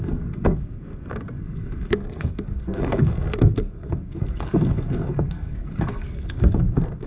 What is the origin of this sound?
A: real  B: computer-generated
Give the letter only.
B